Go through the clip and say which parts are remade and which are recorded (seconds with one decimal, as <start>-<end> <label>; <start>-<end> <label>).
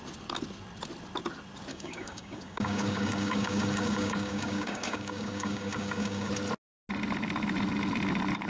0.0-1.7 recorded; 1.7-6.3 remade; 6.3-8.5 recorded